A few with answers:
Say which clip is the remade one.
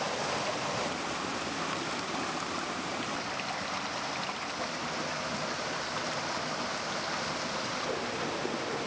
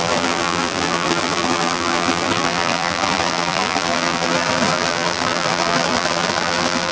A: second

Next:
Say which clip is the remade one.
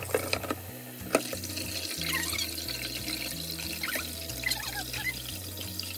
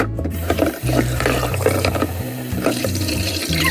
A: second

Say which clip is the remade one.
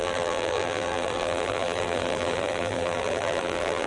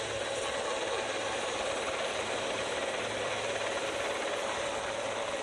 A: first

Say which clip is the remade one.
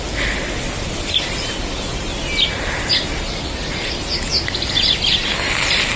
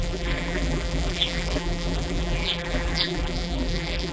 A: second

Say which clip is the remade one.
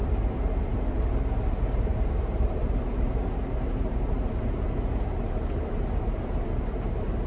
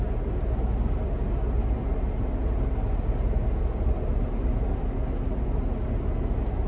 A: first